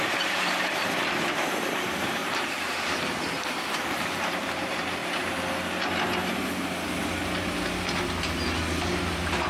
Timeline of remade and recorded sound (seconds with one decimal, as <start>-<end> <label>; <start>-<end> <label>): 0.0-5.0 remade; 5.0-9.5 recorded